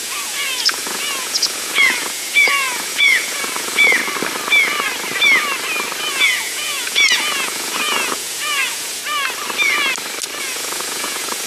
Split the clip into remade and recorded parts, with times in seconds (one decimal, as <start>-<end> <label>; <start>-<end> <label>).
0.0-4.0 remade; 4.0-6.1 recorded; 6.1-9.0 remade; 9.0-10.4 recorded; 10.4-11.5 remade